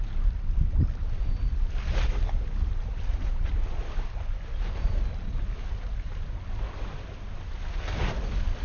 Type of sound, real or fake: real